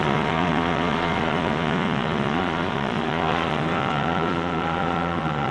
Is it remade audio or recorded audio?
remade